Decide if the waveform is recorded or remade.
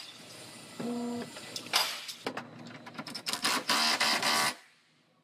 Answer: recorded